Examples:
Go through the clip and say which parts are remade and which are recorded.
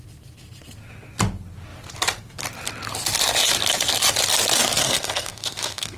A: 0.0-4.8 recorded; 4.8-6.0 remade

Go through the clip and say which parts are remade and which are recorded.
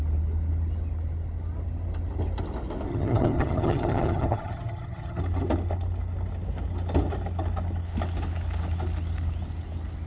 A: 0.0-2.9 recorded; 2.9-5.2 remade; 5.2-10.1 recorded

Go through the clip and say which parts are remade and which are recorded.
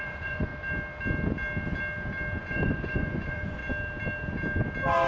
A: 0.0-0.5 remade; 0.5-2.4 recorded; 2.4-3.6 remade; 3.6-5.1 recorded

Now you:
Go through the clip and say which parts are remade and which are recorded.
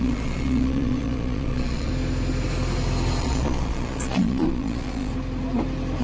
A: 0.0-1.9 remade; 1.9-3.2 recorded; 3.2-5.1 remade; 5.1-6.0 recorded